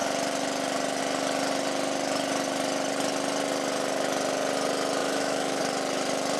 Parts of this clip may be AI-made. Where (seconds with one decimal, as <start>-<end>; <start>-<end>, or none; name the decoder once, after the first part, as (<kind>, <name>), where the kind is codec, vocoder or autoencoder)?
5.0-5.6 (autoencoder, DAC-VAE)

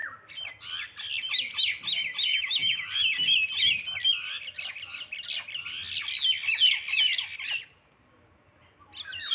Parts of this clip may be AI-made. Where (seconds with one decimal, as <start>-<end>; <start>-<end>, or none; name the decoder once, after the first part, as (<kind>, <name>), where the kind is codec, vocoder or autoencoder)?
2.3-2.9 (autoencoder, DAC-VAE)

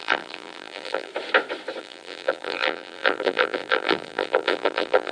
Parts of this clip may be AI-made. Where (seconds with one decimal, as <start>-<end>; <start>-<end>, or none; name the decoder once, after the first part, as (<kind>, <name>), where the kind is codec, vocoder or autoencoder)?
0.0-1.1 (vocoder, BigVGAN v2); 1.8-5.1

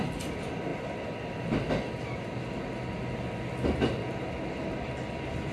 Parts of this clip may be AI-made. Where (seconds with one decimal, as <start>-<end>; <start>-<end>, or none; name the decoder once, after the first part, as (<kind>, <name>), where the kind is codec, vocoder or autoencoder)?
none

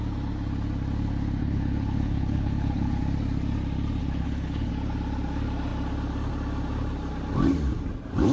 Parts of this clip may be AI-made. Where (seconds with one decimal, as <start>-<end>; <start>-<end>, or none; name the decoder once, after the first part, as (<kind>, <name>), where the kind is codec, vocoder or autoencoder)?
1.4-3.0 (codec, HILCodec); 4.0-4.7

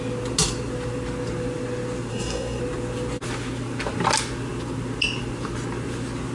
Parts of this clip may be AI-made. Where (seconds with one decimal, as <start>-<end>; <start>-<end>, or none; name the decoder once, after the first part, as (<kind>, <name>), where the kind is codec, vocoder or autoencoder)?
2.1-2.6 (codec, SNAC)